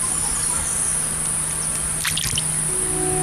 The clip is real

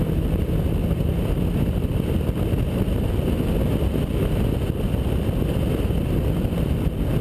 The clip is real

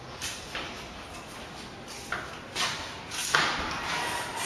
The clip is real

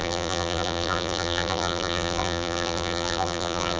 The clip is fake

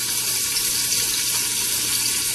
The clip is real